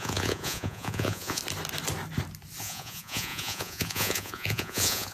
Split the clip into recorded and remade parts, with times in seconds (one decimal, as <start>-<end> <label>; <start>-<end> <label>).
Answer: 0.0-1.4 remade; 1.4-2.6 recorded; 2.6-5.1 remade